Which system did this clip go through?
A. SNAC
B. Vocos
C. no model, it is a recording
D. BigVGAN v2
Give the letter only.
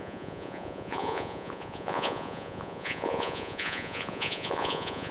B